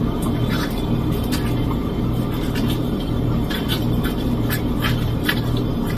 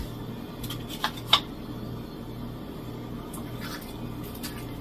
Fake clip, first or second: first